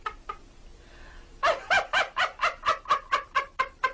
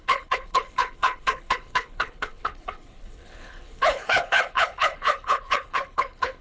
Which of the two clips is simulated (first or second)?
second